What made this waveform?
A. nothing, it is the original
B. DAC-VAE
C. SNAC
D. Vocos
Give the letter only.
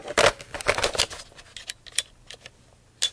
A